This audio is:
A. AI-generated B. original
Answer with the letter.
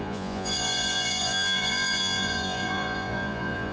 A